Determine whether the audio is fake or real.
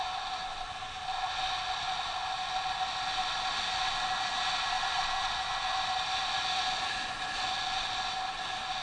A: real